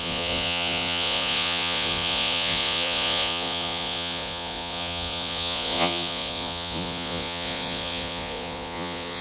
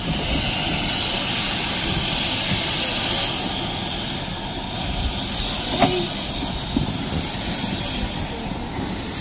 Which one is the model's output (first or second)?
first